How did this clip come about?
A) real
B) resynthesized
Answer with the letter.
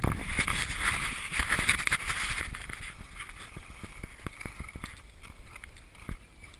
A